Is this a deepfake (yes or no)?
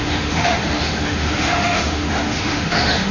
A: yes